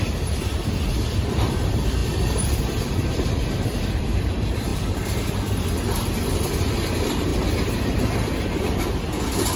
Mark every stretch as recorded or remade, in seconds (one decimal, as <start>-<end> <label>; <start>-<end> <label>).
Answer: 0.0-4.7 remade; 4.7-6.3 recorded; 6.3-7.3 remade; 7.3-9.6 recorded